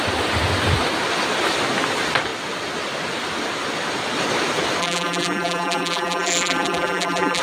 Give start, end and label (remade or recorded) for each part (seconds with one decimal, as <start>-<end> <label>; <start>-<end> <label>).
0.0-4.8 recorded; 4.8-7.4 remade